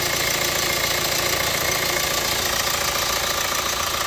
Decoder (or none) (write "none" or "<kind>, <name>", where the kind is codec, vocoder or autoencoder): none